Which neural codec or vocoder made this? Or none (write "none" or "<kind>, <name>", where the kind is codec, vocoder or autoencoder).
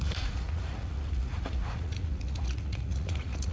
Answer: vocoder, Vocos